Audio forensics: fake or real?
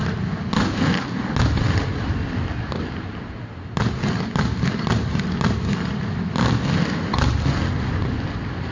real